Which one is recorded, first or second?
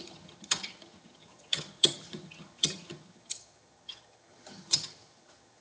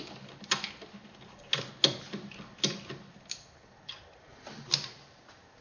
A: second